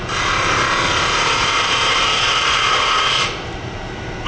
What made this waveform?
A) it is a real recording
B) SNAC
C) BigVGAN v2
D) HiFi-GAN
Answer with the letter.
C